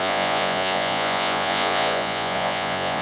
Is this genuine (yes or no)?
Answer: no